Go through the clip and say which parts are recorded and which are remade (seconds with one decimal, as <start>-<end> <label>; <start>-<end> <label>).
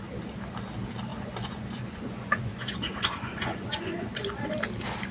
0.0-1.1 recorded; 1.1-4.2 remade; 4.2-5.1 recorded